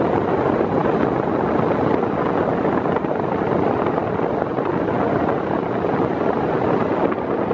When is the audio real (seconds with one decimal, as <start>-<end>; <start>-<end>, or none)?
0.0-7.5